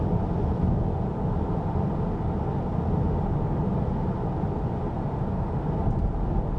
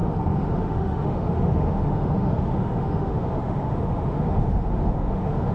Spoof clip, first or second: second